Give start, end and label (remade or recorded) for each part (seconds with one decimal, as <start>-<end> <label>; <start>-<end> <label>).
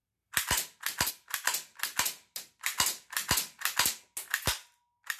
0.0-5.2 recorded